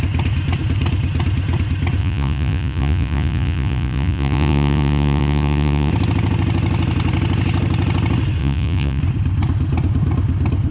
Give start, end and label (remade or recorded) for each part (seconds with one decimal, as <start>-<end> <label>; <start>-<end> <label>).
0.0-2.0 recorded; 2.0-5.9 remade; 5.9-8.4 recorded; 8.4-9.0 remade; 9.0-10.7 recorded